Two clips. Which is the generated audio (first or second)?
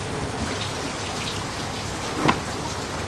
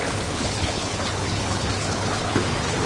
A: second